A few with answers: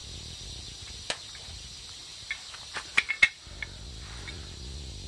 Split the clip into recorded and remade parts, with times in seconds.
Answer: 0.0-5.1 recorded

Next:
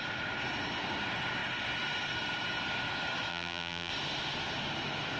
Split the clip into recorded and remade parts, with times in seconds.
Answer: 0.0-3.3 recorded; 3.3-3.9 remade; 3.9-5.2 recorded

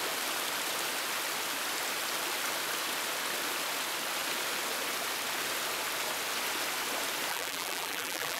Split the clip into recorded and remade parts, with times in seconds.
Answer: 0.0-7.3 recorded; 7.3-8.4 remade

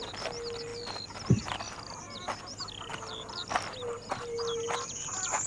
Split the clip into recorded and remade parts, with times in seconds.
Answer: 0.0-5.5 recorded

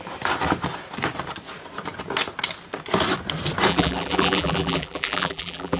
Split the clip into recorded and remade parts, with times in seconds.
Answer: 0.0-3.7 recorded; 3.7-5.8 remade

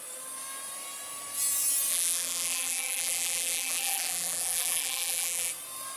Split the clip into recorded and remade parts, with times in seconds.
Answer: 0.0-1.9 recorded; 1.9-5.5 remade; 5.5-6.0 recorded